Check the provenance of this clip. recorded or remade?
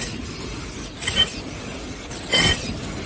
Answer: recorded